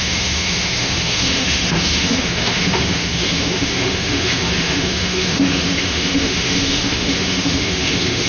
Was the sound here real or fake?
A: fake